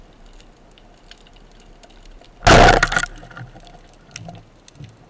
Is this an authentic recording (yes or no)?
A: yes